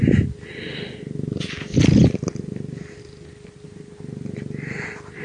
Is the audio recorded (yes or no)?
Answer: yes